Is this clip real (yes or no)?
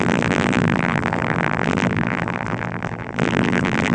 no